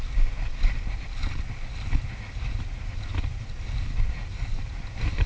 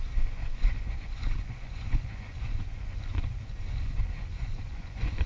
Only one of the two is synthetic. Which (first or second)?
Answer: second